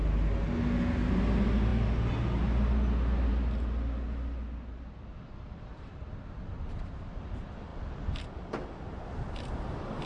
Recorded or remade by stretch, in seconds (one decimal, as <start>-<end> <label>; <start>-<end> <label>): 0.0-10.1 recorded